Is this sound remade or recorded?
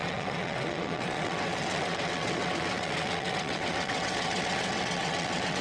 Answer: remade